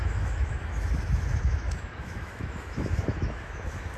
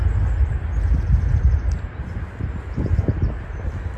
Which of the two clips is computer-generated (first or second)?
first